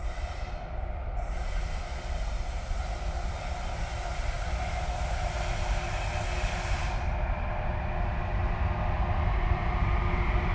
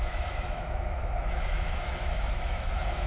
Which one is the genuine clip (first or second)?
first